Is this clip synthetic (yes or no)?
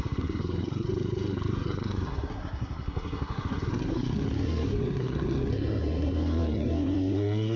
yes